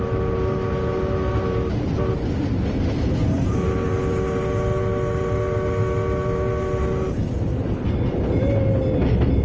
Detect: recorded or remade recorded